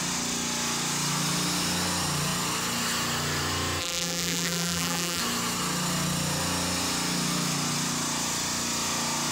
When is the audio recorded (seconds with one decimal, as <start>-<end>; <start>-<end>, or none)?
0.0-3.8; 5.2-9.3

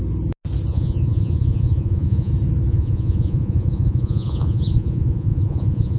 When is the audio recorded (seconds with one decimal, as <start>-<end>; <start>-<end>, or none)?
0.0-0.7; 2.3-2.7

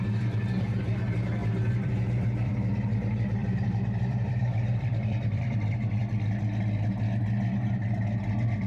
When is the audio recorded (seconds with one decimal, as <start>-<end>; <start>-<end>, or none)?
0.0-1.4; 2.5-3.4; 6.0-8.7